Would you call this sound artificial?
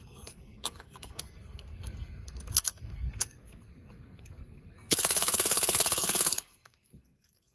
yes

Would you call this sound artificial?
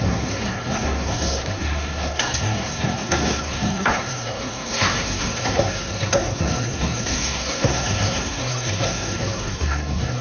yes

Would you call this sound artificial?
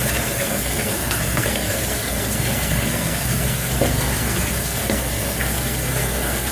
yes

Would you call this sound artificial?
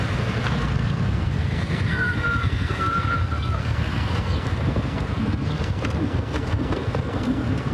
yes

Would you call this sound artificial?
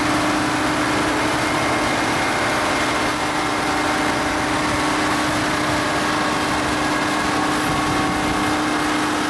no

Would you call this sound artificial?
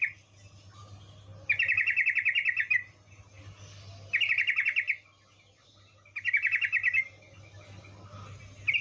no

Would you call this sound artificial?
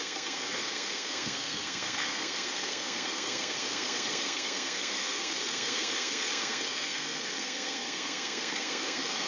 yes